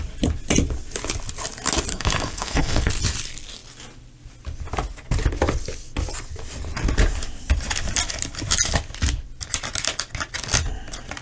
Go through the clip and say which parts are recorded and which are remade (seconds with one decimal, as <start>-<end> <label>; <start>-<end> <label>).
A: 0.0-1.9 recorded; 1.9-2.9 remade; 2.9-11.2 recorded